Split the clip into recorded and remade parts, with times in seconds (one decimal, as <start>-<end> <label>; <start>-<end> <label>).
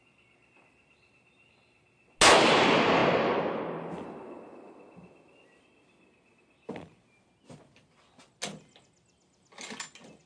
0.0-10.3 recorded